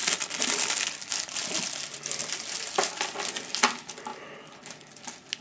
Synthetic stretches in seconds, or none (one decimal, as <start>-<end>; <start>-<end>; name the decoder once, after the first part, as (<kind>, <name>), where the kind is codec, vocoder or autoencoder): none